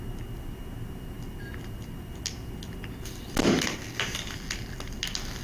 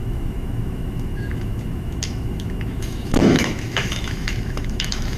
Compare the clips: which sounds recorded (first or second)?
first